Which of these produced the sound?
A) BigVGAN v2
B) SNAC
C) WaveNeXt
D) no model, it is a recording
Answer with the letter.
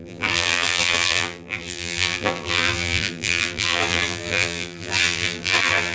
A